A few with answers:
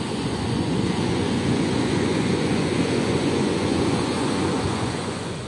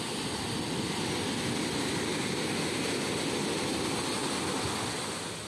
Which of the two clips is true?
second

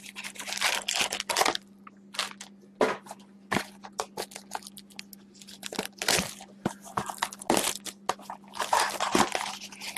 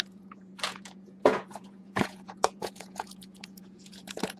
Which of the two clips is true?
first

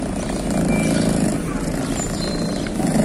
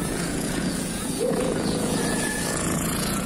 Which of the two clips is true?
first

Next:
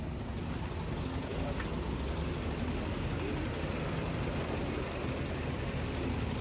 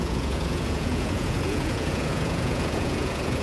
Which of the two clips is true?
first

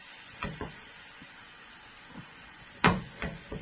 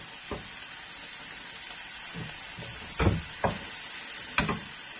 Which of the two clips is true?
second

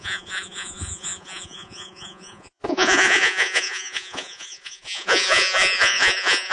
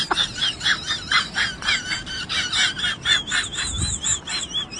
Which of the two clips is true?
second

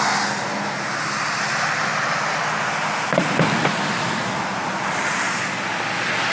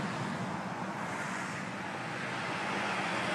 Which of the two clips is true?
first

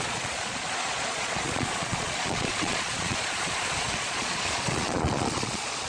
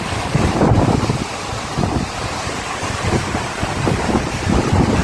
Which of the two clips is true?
second